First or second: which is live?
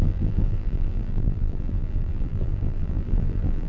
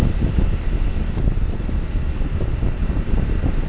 second